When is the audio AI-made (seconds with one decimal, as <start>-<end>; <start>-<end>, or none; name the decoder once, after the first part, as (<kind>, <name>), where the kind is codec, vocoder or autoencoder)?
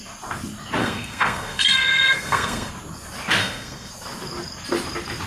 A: 0.8-2.7 (codec, SNAC); 3.4-3.9